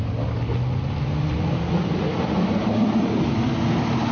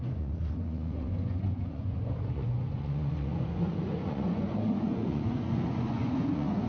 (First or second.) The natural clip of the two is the first